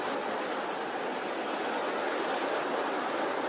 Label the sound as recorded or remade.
recorded